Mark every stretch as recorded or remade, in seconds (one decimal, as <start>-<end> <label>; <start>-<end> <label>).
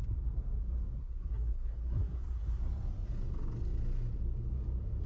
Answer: 0.0-1.0 recorded; 1.0-2.6 remade; 2.6-5.1 recorded